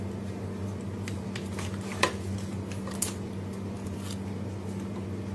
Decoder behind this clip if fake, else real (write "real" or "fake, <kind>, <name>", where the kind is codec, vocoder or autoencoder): real